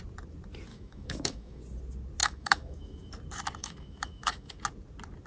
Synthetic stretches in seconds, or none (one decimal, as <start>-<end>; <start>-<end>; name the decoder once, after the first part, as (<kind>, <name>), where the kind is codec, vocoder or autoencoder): 0.7-1.6 (autoencoder, DAC-VAE); 2.2-3.1; 3.6-4.6